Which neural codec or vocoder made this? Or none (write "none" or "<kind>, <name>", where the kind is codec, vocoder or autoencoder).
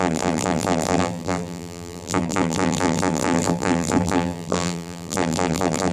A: vocoder, BigVGAN v2